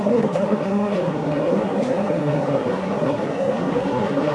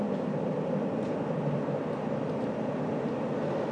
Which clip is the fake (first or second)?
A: first